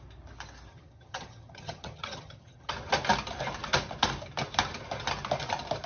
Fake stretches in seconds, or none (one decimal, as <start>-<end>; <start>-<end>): 0.7-2.7